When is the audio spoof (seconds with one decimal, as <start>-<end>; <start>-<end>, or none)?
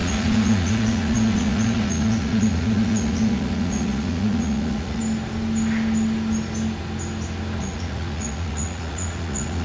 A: 0.0-5.0; 7.6-9.6